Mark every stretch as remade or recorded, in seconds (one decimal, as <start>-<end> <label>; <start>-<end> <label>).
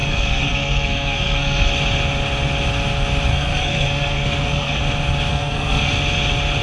0.0-1.7 remade; 1.7-3.3 recorded; 3.3-4.8 remade; 4.8-5.3 recorded; 5.3-5.9 remade; 5.9-6.6 recorded